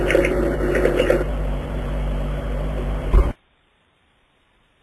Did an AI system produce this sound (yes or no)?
yes